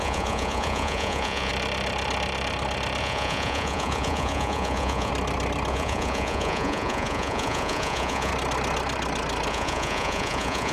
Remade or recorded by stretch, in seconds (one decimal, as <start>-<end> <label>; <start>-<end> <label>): 0.0-1.5 remade; 1.5-3.0 recorded; 3.0-5.1 remade; 5.1-5.7 recorded; 5.7-8.3 remade; 8.3-9.5 recorded; 9.5-10.7 remade